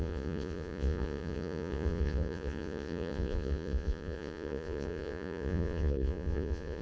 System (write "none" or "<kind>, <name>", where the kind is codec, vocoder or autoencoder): vocoder, Vocos